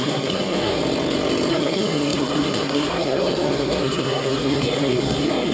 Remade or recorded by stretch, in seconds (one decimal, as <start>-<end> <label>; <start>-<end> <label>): 0.0-0.8 remade; 0.8-1.5 recorded; 1.5-5.5 remade